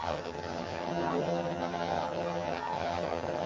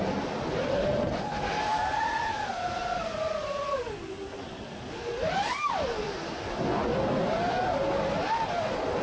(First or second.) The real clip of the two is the second